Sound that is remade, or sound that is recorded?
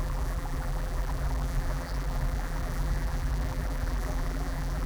remade